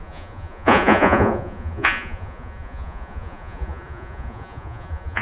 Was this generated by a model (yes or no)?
yes